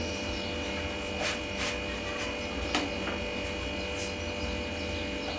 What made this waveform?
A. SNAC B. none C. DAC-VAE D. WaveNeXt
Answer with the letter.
B